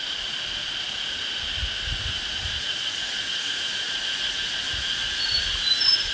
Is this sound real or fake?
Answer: real